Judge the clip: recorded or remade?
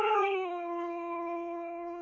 remade